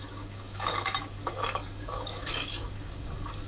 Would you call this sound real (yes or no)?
no